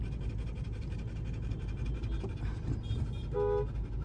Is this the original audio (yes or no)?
yes